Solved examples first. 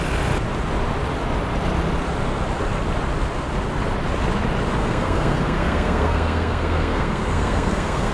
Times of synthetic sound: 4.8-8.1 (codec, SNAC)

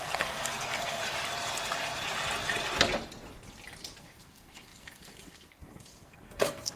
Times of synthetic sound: 0.0-1.0 (codec, SNAC); 4.0-6.8

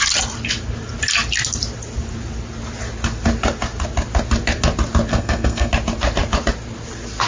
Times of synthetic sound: 5.1-5.7 (codec, SNAC)

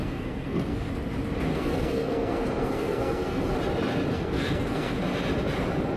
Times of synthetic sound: 0.0-0.9 (codec, SNAC); 1.5-3.5; 4.1-5.0

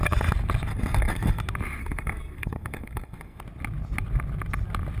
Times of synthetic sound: 0.7-1.4 (codec, SNAC); 1.8-3.4